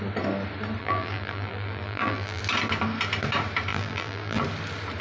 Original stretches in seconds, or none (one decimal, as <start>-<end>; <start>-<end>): 0.0-0.8; 2.4-3.7; 4.4-5.0